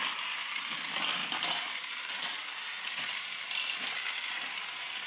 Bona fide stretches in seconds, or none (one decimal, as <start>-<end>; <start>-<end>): 0.0-5.1